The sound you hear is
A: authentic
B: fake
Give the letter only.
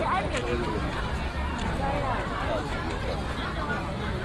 A